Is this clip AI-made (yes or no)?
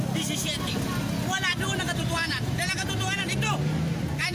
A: no